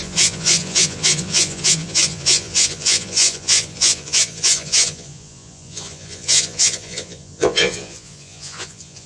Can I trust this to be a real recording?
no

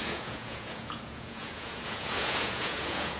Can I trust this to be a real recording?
no